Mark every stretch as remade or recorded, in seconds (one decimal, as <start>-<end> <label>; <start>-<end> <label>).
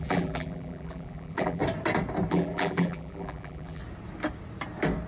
0.0-1.6 remade; 1.6-2.3 recorded; 2.3-3.8 remade; 3.8-5.1 recorded